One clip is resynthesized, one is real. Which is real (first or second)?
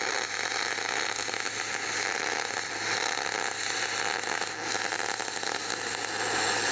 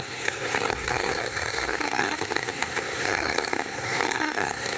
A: first